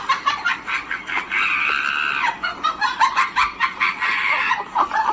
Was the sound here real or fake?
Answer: fake